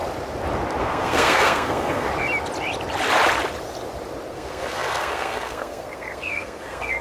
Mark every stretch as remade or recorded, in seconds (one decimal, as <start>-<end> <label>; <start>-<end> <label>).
0.0-0.8 recorded; 0.8-2.1 remade; 2.1-4.3 recorded; 4.3-7.0 remade